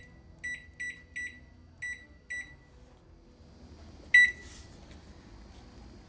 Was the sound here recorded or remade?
recorded